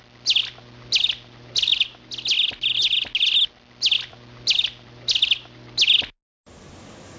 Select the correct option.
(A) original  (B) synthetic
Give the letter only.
A